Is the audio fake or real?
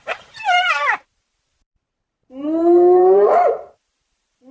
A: fake